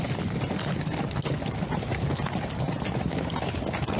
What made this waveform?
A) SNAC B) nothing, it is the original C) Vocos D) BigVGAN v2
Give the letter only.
B